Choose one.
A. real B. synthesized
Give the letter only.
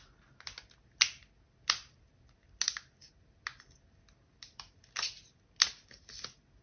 A